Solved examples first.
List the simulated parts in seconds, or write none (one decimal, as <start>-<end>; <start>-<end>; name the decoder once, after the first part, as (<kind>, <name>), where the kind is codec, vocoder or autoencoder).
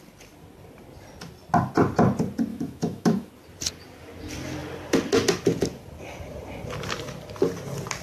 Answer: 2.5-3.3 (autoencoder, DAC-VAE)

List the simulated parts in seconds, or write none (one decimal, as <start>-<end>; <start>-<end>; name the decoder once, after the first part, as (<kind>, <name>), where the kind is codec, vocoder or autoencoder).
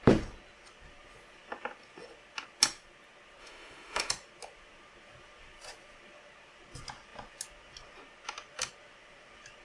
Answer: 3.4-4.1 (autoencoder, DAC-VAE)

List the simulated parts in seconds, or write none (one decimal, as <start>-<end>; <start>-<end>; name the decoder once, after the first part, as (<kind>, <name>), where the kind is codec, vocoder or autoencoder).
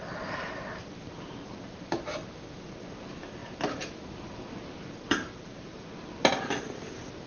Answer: none